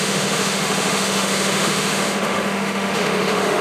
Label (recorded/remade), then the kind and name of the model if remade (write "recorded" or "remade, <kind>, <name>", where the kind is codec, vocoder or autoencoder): remade, autoencoder, DAC-VAE